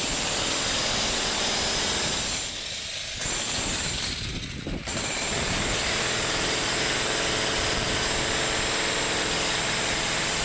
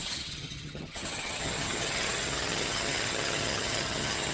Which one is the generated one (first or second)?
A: second